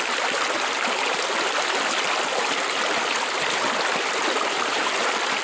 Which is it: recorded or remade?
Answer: recorded